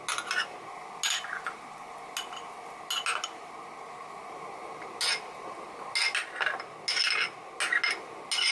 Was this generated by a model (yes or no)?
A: no